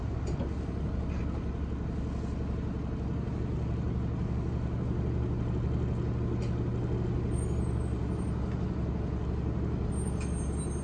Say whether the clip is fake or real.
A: real